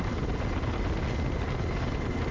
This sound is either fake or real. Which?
real